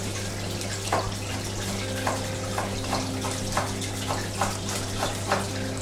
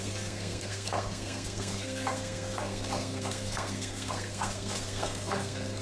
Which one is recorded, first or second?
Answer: first